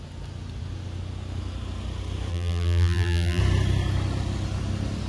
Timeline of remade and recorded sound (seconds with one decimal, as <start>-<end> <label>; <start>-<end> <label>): 0.0-2.3 recorded; 2.3-3.4 remade; 3.4-5.1 recorded